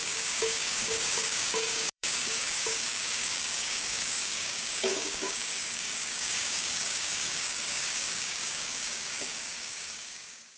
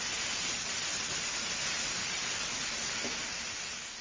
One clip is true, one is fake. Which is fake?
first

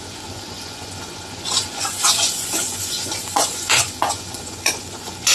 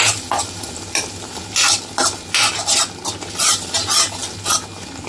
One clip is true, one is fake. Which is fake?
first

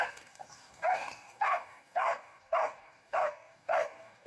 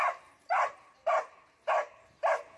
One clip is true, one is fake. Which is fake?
first